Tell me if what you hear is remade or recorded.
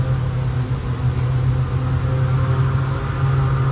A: recorded